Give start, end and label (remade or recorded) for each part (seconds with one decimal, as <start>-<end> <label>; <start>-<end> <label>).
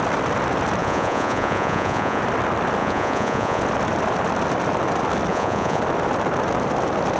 0.0-0.8 recorded; 0.8-2.2 remade; 2.2-2.8 recorded; 2.8-3.6 remade; 3.6-5.3 recorded; 5.3-5.8 remade; 5.8-7.2 recorded